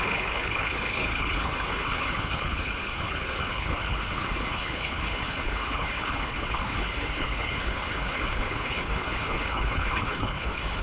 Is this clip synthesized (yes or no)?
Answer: yes